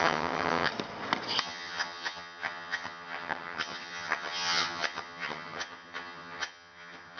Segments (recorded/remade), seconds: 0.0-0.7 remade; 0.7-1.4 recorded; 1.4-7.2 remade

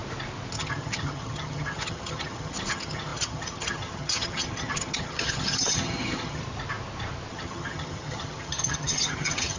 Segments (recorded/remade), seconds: 0.0-0.5 recorded; 0.5-6.4 remade; 6.4-7.3 recorded; 7.3-9.6 remade

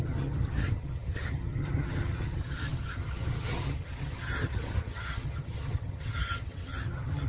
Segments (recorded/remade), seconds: 0.0-7.3 remade

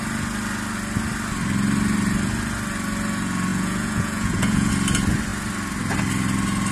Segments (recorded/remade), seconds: 0.0-3.5 recorded; 3.5-4.7 remade; 4.7-6.7 recorded